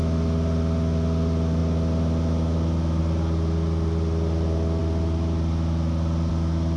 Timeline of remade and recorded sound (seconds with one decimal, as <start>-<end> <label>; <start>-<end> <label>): 0.0-6.8 recorded